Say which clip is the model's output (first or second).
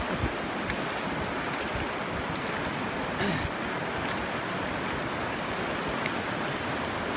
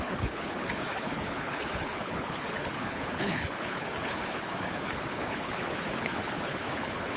second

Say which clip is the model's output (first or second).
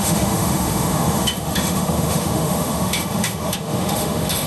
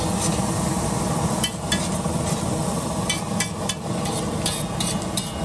first